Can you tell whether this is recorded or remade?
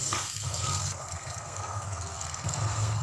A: remade